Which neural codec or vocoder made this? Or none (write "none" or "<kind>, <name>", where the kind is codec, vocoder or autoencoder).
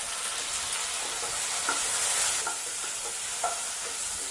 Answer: none